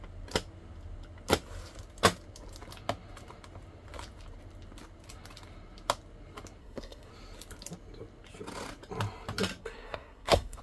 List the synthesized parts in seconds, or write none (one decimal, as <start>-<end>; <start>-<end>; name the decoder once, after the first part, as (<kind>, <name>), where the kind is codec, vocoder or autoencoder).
6.6-7.1 (codec, SNAC); 9.6-10.6